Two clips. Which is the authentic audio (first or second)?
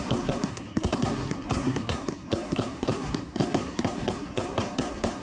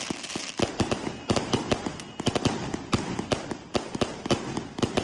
second